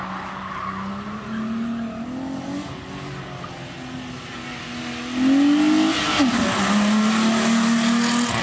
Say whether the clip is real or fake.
real